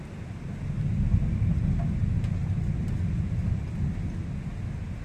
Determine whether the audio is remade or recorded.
recorded